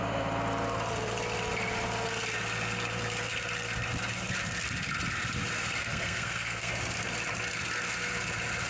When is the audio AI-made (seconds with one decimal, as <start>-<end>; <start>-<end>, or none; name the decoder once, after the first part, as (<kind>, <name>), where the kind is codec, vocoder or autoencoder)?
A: 5.8-6.7 (codec, SNAC)